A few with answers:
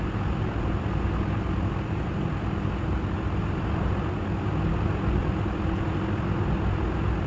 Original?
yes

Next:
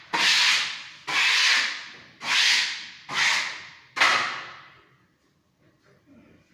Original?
yes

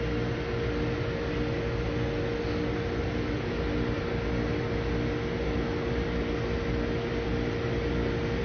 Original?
yes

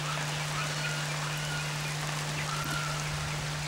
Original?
yes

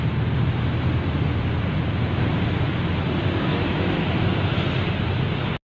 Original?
yes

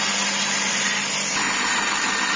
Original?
yes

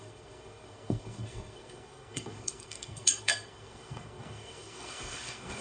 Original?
no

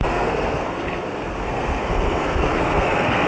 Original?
no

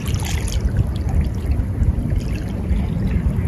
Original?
yes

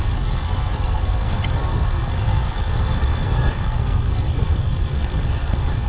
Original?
no